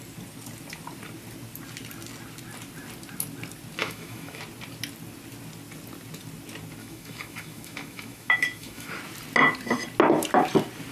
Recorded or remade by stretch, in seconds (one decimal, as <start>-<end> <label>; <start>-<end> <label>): 0.0-3.8 recorded; 3.8-4.4 remade; 4.4-6.8 recorded; 6.8-8.9 remade; 8.9-10.9 recorded